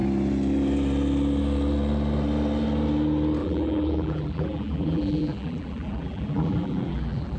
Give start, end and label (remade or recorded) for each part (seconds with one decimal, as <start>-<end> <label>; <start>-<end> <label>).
0.0-3.4 recorded; 3.4-7.4 remade